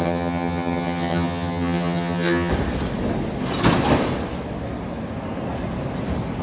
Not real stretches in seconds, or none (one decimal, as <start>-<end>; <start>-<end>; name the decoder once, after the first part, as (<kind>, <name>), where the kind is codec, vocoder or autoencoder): 0.0-2.5 (vocoder, HiFi-GAN)